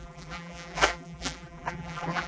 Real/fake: fake